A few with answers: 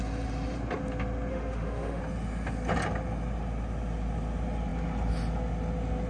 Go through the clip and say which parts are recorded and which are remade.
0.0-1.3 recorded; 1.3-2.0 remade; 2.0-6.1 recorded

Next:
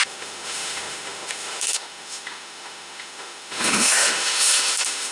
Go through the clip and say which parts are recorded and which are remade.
0.0-5.1 remade

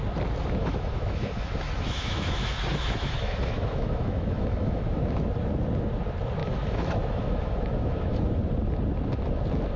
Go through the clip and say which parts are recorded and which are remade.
0.0-0.6 recorded; 0.6-5.3 remade; 5.3-6.4 recorded; 6.4-8.3 remade; 8.3-9.8 recorded